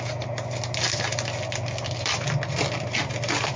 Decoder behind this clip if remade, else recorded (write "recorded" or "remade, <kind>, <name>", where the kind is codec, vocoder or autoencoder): recorded